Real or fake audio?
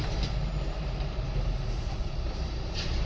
fake